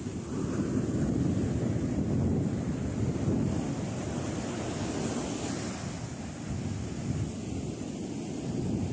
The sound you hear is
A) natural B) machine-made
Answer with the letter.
A